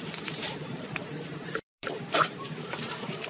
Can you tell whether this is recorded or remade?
remade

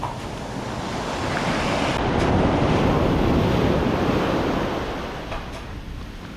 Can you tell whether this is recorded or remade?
recorded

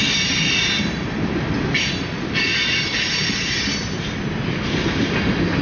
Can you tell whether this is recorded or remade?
recorded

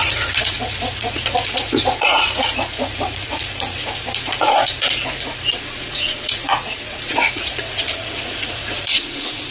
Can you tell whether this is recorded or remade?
remade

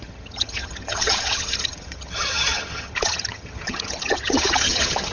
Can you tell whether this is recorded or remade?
remade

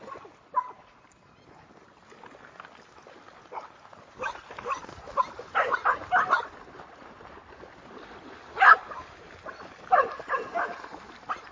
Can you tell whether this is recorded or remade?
recorded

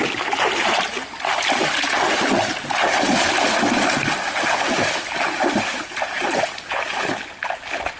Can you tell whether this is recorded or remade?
recorded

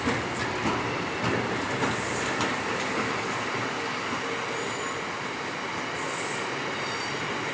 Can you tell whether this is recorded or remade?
recorded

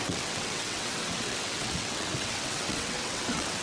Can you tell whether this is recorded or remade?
remade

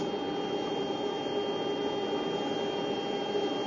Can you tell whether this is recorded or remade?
recorded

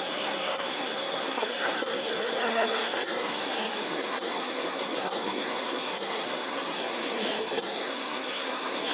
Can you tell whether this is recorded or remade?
remade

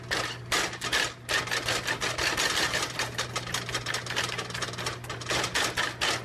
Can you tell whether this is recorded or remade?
recorded